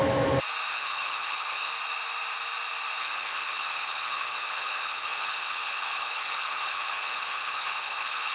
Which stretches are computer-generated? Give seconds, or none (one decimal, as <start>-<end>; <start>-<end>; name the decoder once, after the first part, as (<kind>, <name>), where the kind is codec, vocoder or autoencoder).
0.7-1.7 (codec, HILCodec); 3.0-8.3